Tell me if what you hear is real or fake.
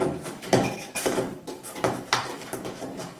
fake